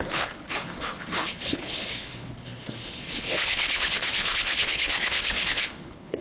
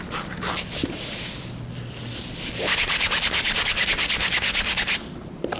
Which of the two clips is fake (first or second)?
first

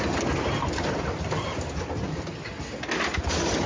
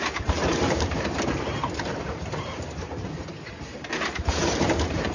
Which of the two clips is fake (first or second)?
second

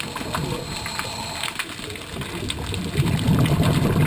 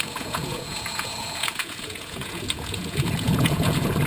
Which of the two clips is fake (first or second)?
second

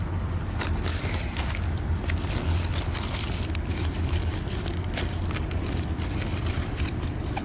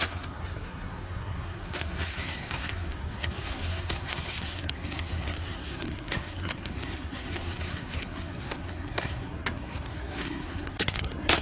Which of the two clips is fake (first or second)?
second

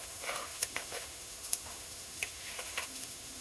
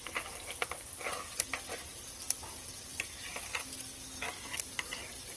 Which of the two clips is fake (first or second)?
first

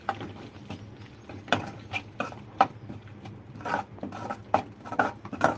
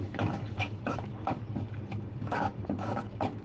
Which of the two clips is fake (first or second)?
second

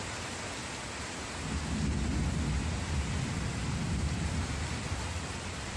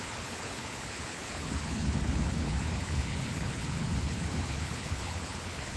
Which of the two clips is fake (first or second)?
second